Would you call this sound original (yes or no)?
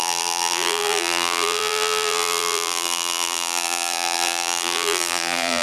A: no